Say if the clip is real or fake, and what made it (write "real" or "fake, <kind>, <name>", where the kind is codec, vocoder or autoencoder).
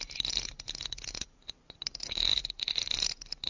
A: real